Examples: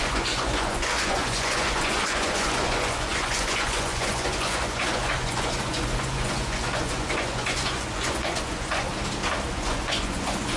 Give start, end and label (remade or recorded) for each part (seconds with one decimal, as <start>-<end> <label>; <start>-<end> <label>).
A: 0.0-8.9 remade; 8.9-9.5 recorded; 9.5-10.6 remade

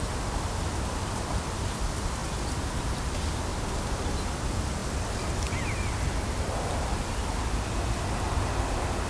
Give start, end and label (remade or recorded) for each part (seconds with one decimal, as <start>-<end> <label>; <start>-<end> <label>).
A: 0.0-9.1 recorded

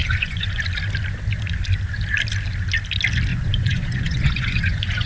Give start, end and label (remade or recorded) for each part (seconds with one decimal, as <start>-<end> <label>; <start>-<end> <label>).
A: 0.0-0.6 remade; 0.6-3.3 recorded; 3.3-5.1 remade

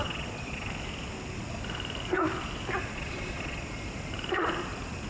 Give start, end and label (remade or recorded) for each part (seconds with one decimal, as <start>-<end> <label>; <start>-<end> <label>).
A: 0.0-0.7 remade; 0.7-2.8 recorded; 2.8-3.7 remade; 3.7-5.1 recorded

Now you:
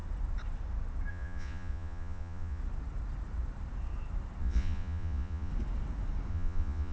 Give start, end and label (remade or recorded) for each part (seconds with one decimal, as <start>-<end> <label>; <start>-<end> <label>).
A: 0.0-1.1 recorded; 1.1-2.6 remade; 2.6-4.4 recorded; 4.4-5.5 remade; 5.5-6.3 recorded; 6.3-6.9 remade